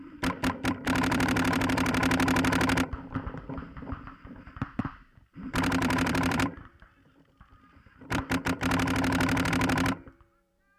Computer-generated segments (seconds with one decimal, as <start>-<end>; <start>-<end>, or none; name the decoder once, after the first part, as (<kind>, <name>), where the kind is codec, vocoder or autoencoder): 0.0-2.0 (vocoder, BigVGAN v2); 4.3-10.8